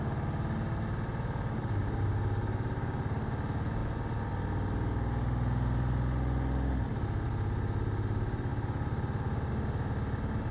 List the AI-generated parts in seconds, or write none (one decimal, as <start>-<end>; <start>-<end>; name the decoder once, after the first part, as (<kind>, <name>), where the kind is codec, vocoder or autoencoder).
none